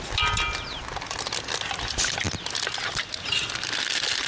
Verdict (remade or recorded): recorded